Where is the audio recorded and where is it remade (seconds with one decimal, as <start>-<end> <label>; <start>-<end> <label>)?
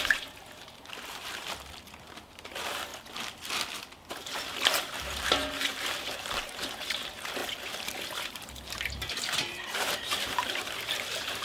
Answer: 0.0-2.9 remade; 2.9-4.1 recorded; 4.1-7.4 remade; 7.4-8.3 recorded; 8.3-11.4 remade